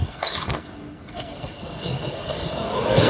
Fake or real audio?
fake